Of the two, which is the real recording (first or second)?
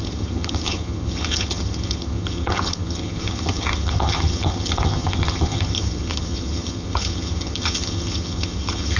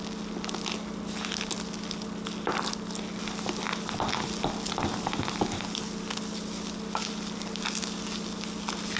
second